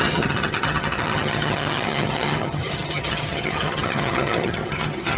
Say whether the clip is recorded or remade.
remade